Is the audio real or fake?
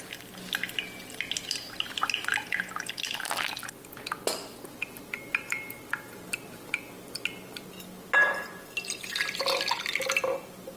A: real